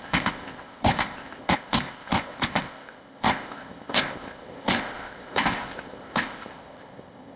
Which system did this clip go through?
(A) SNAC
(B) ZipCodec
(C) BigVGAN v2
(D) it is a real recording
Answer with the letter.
B